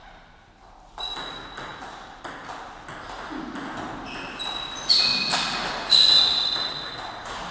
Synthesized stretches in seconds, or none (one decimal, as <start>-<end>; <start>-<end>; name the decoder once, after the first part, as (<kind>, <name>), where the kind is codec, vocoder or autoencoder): none